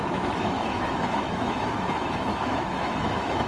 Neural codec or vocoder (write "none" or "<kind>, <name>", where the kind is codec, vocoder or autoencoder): autoencoder, DAC-VAE